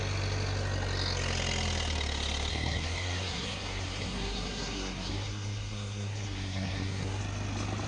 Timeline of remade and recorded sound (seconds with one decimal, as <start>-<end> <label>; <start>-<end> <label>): 0.0-2.5 recorded; 2.5-7.2 remade; 7.2-7.9 recorded